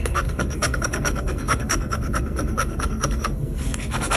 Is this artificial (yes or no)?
yes